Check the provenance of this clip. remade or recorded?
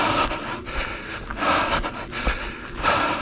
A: recorded